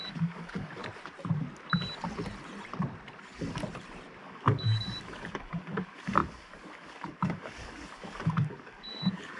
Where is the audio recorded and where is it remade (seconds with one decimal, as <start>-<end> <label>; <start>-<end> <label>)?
0.0-0.8 remade; 0.8-4.2 recorded; 4.2-9.4 remade